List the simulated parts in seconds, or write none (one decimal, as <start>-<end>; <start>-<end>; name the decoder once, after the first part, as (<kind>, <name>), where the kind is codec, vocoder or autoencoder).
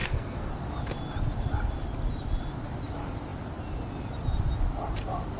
0.0-0.5 (codec, SNAC)